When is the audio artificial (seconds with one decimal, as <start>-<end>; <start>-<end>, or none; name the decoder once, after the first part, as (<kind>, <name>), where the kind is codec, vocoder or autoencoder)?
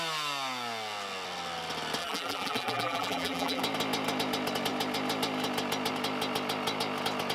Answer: 2.0-3.6 (vocoder, BigVGAN v2)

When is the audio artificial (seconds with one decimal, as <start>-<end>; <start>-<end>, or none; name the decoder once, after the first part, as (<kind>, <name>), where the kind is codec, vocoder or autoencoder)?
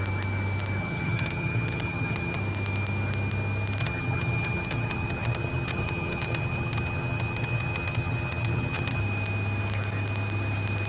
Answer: 0.8-2.4 (vocoder, HiFi-GAN); 3.8-9.0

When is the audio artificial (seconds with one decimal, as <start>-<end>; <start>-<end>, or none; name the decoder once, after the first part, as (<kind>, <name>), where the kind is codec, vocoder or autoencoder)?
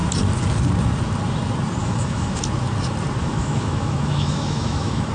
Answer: 1.8-2.4 (autoencoder, DAC-VAE); 3.2-5.1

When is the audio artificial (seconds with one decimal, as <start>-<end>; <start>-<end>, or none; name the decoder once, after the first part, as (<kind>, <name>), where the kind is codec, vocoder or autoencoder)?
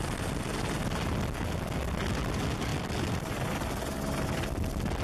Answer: none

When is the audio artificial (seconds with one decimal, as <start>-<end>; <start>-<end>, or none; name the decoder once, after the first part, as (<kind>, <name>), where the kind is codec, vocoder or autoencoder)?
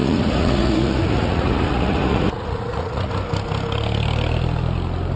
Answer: 0.0-3.1 (vocoder, Vocos)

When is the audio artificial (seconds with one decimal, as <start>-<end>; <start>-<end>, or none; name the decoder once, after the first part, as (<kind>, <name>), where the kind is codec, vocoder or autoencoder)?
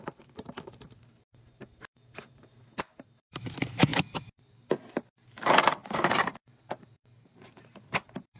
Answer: 0.0-8.4 (vocoder, BigVGAN v2)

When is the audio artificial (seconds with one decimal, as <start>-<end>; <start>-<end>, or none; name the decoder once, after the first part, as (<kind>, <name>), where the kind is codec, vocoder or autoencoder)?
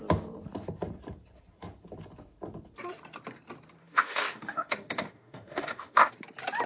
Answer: 3.8-6.1 (autoencoder, DAC-VAE)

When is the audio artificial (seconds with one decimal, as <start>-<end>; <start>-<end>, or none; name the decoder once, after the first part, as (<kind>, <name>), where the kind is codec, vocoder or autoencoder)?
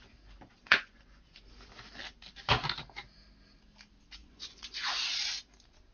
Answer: 0.6-1.4 (vocoder, Vocos); 4.2-4.9